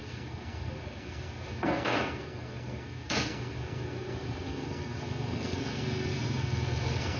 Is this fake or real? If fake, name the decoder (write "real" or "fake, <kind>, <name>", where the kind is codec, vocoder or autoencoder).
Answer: fake, codec, SNAC